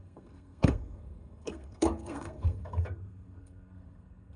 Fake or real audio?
fake